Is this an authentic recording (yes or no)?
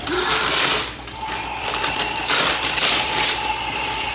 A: no